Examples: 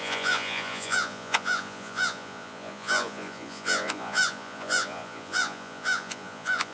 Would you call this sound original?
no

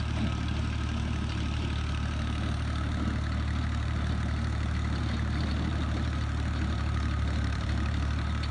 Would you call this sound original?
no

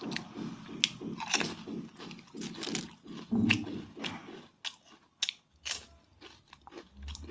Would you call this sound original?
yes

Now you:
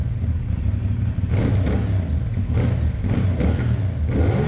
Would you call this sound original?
yes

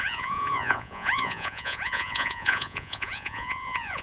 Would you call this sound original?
no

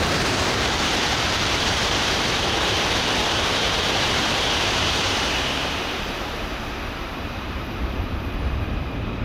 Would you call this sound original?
no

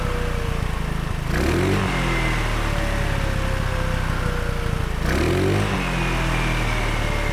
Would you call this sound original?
yes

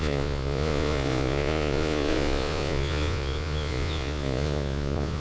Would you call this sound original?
no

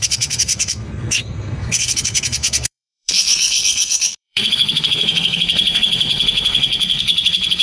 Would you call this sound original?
no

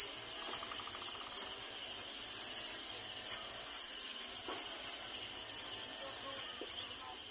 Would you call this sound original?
yes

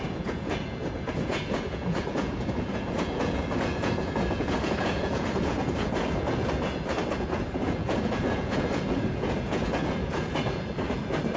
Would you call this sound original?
no